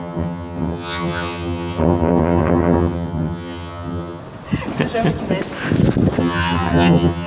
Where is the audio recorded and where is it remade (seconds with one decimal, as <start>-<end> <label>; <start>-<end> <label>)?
0.0-4.2 remade; 4.2-6.2 recorded; 6.2-7.3 remade